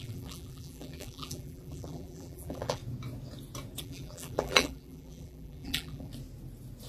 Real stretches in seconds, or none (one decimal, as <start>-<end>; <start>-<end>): 2.8-3.8; 6.1-6.9